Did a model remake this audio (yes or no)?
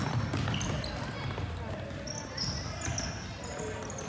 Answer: no